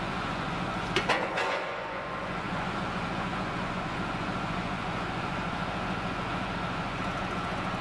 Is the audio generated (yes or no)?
yes